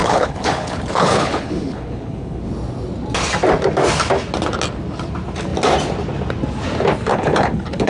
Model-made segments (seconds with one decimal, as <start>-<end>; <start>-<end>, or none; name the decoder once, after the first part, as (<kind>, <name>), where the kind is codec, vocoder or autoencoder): 0.0-2.5 (codec, HILCodec); 7.1-7.9